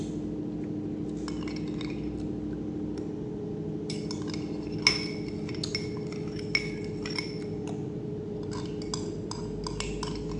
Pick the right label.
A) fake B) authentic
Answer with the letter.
B